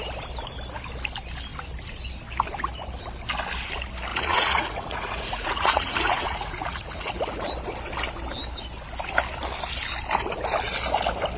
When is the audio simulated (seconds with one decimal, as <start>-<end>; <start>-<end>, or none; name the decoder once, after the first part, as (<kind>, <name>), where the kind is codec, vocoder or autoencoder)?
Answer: 4.1-7.5 (vocoder, Vocos)